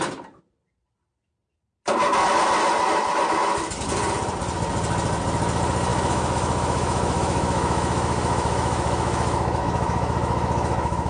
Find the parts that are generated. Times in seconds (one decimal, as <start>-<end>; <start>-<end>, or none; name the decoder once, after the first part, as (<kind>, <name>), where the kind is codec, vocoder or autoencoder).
5.9-11.1 (autoencoder, DAC-VAE)